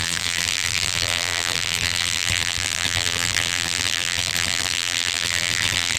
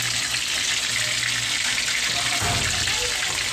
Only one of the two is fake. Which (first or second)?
first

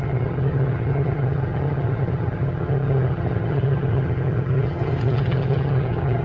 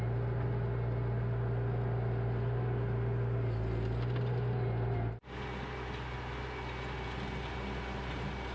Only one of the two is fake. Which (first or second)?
first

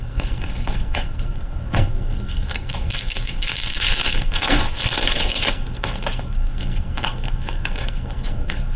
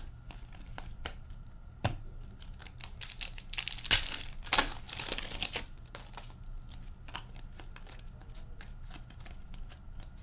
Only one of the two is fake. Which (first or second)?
first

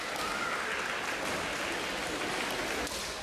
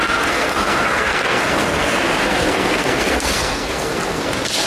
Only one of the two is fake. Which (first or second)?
second